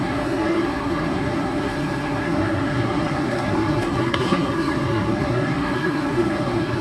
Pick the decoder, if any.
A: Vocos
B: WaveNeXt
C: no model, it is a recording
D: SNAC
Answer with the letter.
D